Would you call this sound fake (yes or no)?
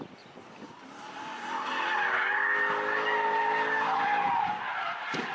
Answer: no